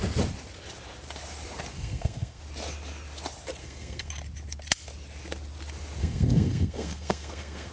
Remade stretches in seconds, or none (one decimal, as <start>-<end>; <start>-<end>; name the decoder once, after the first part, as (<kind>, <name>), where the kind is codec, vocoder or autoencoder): 1.7-2.4 (codec, SNAC); 3.6-4.1; 6.0-7.7